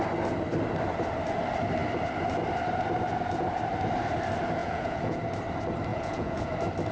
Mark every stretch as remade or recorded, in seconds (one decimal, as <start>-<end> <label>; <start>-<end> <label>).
0.0-4.6 recorded; 4.6-5.2 remade; 5.2-5.9 recorded; 5.9-6.5 remade; 6.5-6.9 recorded